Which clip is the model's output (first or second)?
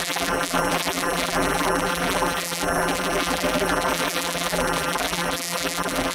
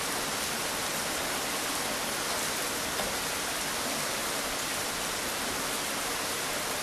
first